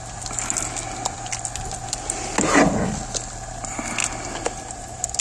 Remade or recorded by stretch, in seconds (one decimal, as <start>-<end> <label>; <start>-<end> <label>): 0.0-5.2 recorded

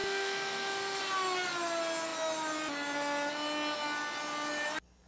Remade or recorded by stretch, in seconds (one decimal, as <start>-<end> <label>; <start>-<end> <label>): 0.0-1.0 remade; 1.0-5.1 recorded

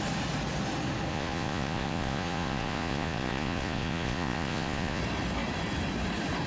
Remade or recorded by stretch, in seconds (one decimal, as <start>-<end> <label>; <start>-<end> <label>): 0.0-1.1 recorded; 1.1-5.0 remade; 5.0-6.5 recorded